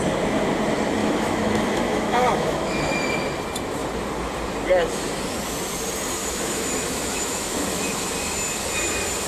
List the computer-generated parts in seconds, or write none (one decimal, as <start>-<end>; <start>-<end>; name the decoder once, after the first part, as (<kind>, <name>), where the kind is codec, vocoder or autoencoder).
1.0-2.9 (autoencoder, DAC-VAE); 6.2-8.1